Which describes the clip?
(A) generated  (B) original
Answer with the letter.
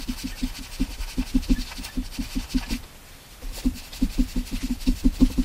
A